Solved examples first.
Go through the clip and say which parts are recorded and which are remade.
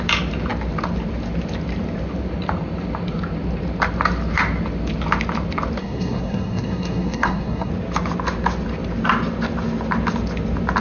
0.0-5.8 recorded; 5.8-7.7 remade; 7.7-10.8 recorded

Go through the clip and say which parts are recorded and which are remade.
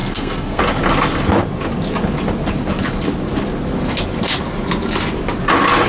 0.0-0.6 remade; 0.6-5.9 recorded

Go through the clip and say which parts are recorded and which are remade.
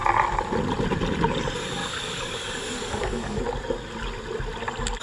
0.0-1.8 recorded; 1.8-3.4 remade; 3.4-5.0 recorded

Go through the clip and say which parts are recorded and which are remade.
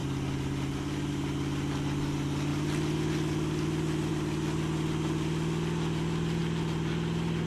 0.0-7.5 recorded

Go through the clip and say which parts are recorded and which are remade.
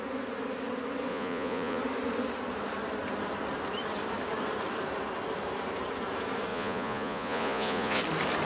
0.0-1.1 recorded; 1.1-1.8 remade; 1.8-6.5 recorded; 6.5-8.0 remade; 8.0-8.4 recorded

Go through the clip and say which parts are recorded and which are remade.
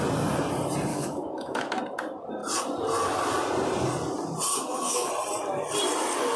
0.0-0.9 recorded; 0.9-1.8 remade; 1.8-4.5 recorded; 4.5-5.1 remade; 5.1-6.4 recorded